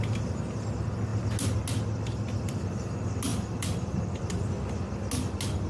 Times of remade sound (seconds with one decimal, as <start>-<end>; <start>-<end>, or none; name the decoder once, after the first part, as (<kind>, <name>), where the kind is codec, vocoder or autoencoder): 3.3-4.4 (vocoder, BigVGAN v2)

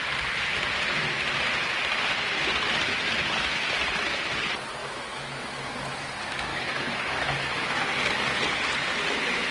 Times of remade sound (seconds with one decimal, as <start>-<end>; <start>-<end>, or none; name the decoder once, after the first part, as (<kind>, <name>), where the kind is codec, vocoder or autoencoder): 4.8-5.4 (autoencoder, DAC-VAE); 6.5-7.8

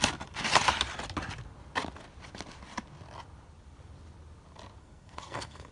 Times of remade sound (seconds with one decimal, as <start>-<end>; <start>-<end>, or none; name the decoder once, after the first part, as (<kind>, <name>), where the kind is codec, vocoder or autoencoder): 4.8-5.7 (codec, SNAC)

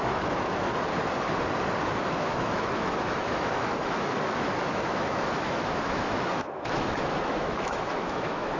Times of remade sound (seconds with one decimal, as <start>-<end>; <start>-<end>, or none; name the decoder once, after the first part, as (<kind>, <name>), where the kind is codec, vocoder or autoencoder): 0.0-0.7 (autoencoder, DAC-VAE); 2.1-8.6

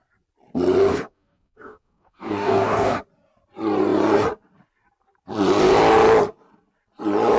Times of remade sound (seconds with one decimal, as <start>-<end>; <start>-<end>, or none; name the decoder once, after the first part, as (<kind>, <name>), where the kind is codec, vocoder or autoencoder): 0.9-3.0 (codec, DAC)

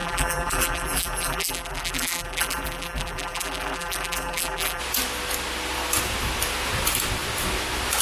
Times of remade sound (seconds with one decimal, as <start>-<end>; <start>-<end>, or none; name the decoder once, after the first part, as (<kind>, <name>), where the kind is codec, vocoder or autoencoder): 0.0-4.8 (vocoder, BigVGAN v2)

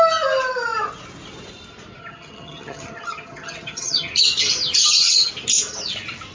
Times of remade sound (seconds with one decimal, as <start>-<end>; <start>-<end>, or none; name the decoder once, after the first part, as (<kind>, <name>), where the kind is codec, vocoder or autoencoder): 2.0-4.1 (vocoder, HiFi-GAN); 4.8-5.3